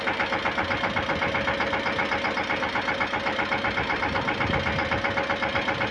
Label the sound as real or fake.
real